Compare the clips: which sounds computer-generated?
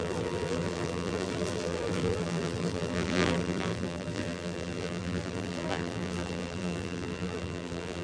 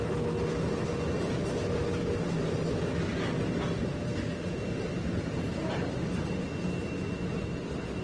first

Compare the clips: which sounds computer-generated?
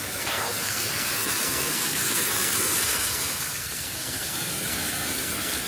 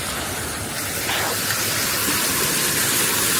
first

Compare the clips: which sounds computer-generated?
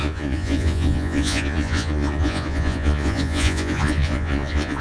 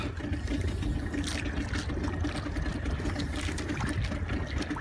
first